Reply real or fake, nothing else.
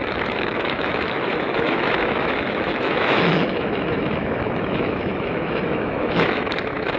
fake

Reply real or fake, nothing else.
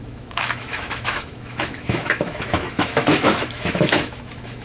fake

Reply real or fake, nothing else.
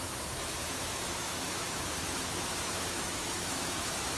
fake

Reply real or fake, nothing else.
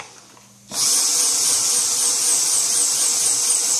real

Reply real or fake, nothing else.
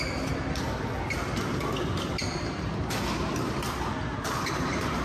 real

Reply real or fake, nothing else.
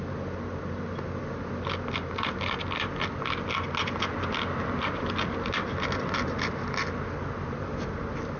real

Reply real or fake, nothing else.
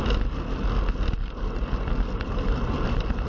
real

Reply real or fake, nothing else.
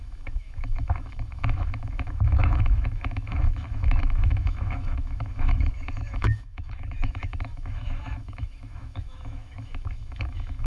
fake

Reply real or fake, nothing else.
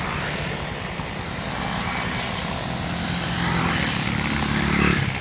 real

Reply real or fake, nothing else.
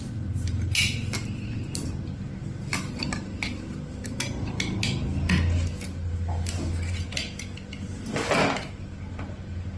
real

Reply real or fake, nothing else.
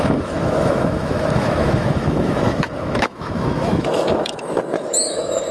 fake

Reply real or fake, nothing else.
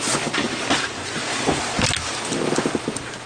real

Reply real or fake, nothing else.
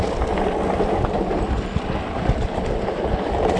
real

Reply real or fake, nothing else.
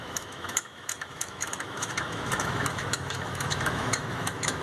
fake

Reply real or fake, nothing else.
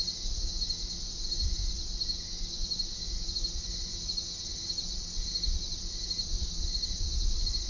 real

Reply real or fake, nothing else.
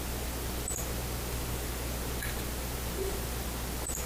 real